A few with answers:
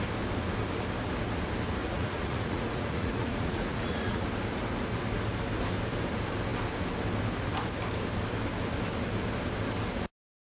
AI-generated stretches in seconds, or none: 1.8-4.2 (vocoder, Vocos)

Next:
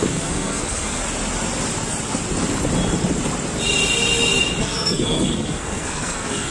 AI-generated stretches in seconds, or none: 0.0-1.0 (codec, SNAC); 4.6-6.5

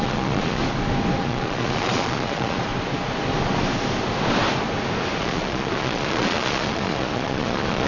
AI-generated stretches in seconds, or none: 0.0-0.6 (vocoder, Vocos); 1.2-2.7; 5.2-7.9

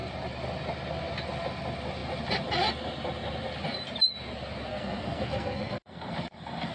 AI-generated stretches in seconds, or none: 4.7-6.7 (codec, SNAC)